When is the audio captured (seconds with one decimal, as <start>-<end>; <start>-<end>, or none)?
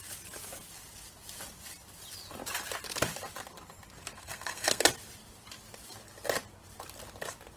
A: 0.0-4.2; 4.8-7.6